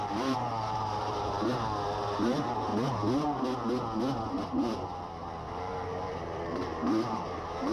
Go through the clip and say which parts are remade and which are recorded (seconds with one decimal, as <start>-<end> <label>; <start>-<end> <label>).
0.0-2.7 remade; 2.7-4.3 recorded; 4.3-7.7 remade